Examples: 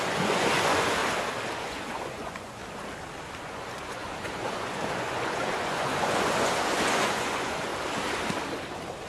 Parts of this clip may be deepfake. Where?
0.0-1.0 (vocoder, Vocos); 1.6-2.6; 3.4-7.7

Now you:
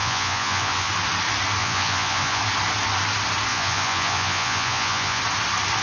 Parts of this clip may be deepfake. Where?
0.0-0.9 (vocoder, Vocos); 1.6-2.4; 3.5-5.2